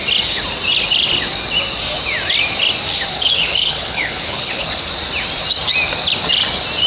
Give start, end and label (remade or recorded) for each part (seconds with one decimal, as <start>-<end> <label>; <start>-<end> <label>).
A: 0.0-3.1 recorded; 3.1-4.9 remade; 4.9-6.9 recorded